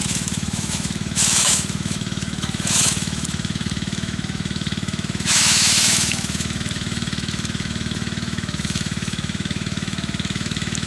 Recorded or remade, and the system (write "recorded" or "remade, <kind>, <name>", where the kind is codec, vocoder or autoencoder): remade, autoencoder, DAC-VAE